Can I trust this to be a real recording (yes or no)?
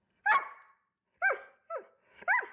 yes